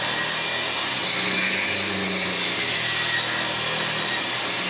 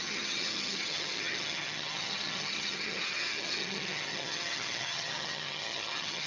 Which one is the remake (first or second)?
second